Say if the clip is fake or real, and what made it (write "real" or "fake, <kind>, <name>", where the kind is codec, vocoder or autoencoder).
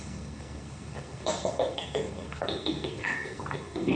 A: fake, codec, SNAC